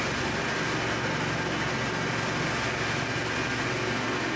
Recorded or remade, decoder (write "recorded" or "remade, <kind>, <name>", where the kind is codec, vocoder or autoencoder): recorded